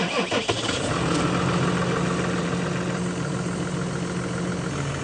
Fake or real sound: real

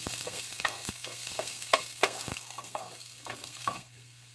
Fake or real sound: fake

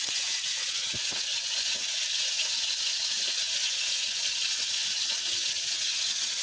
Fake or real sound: fake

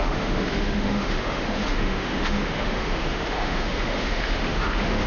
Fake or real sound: fake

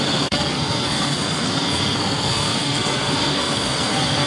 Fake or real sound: fake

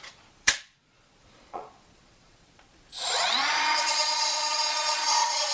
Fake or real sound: fake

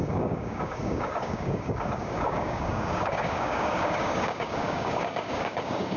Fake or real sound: fake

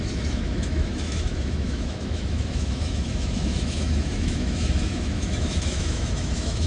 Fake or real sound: fake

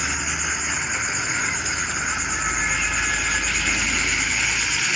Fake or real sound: real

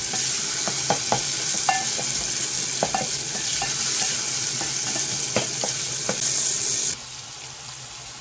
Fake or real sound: real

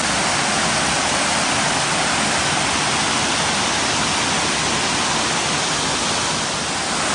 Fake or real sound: real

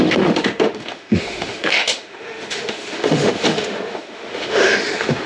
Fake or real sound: fake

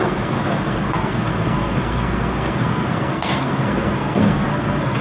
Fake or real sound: fake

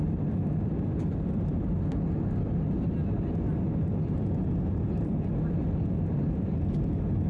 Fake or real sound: real